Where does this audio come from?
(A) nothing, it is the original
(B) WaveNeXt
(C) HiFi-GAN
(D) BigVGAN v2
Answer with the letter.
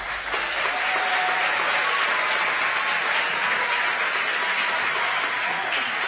A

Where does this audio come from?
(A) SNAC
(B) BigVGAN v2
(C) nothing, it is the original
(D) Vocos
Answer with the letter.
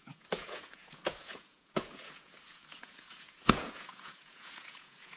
D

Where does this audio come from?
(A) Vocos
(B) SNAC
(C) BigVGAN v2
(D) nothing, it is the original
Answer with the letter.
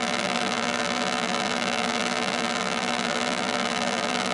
C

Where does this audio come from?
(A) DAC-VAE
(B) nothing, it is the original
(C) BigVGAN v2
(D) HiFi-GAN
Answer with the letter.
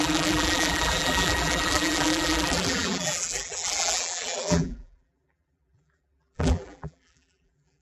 C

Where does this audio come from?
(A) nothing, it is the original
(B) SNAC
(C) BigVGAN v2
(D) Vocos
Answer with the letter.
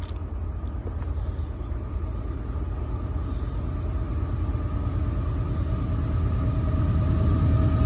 A